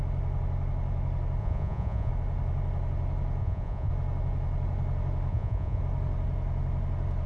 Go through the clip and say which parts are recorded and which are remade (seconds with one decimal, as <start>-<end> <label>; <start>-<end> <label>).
0.0-1.4 recorded; 1.4-2.1 remade; 2.1-3.4 recorded; 3.4-3.9 remade; 3.9-5.3 recorded; 5.3-5.8 remade; 5.8-7.3 recorded